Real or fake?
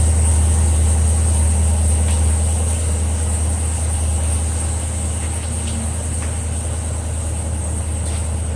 real